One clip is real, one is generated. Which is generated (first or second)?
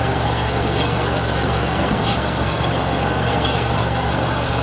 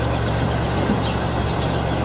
first